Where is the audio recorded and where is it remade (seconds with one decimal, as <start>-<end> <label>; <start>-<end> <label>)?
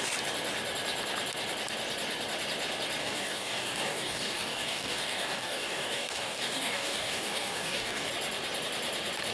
0.0-3.0 recorded; 3.0-8.1 remade; 8.1-9.3 recorded